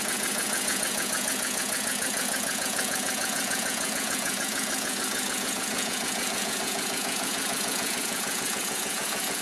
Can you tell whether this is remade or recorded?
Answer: remade